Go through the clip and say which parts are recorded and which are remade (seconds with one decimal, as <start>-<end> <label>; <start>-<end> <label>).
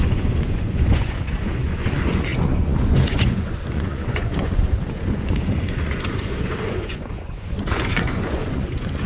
0.0-9.1 remade